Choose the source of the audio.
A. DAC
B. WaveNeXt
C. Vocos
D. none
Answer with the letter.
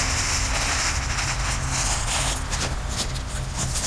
D